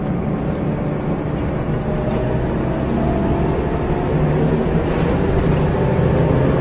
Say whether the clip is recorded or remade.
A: recorded